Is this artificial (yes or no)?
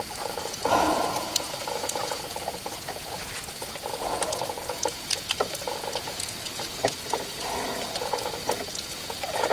yes